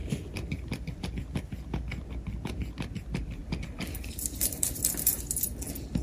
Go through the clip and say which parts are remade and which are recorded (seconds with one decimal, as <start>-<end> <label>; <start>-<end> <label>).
0.0-1.0 remade; 1.0-3.4 recorded; 3.4-5.2 remade; 5.2-6.0 recorded